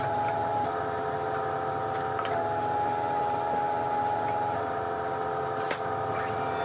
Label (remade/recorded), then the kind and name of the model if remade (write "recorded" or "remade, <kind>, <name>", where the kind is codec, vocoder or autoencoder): recorded